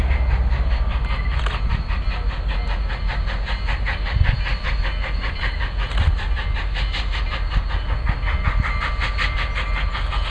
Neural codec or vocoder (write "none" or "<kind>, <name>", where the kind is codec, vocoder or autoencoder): none